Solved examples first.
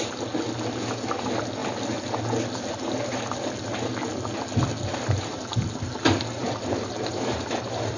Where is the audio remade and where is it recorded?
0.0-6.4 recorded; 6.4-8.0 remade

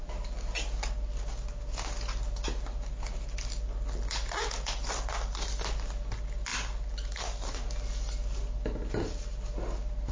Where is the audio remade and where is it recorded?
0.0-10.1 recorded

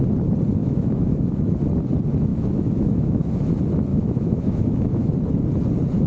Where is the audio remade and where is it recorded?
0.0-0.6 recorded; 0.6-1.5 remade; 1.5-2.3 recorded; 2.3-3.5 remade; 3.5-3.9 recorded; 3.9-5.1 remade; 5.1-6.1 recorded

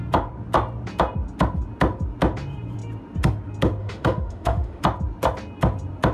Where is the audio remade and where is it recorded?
0.0-3.8 recorded; 3.8-4.8 remade; 4.8-6.1 recorded

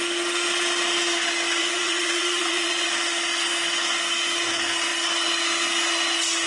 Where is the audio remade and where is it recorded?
0.0-1.6 recorded; 1.6-2.9 remade; 2.9-6.5 recorded

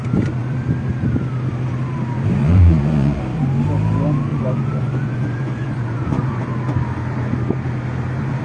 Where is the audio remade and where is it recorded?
0.0-2.4 recorded; 2.4-3.2 remade; 3.2-4.3 recorded; 4.3-6.4 remade; 6.4-8.4 recorded

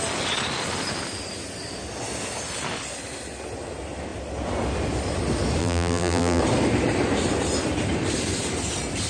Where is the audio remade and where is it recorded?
0.0-5.6 recorded; 5.6-6.4 remade; 6.4-9.1 recorded